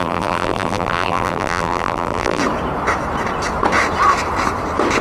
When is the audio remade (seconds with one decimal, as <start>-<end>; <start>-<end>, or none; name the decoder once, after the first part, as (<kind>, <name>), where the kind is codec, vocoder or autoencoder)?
0.0-2.4 (vocoder, BigVGAN v2)